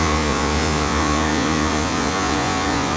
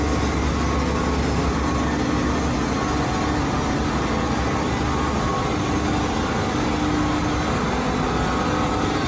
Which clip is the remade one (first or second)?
first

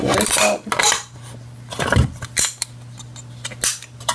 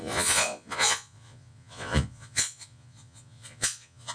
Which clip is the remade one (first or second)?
second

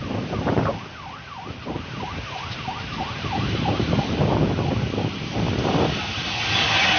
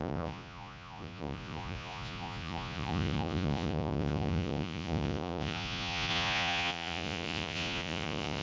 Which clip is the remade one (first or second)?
second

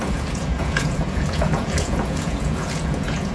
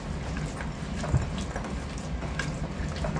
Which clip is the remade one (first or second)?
first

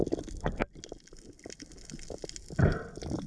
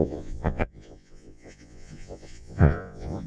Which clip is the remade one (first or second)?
second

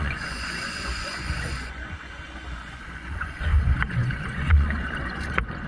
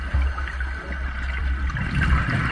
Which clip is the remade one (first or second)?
first